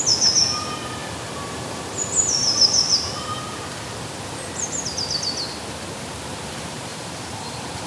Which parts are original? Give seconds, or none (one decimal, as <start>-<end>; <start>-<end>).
0.0-1.0; 4.5-6.9